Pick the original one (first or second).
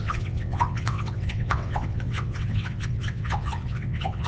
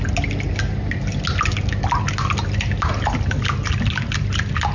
second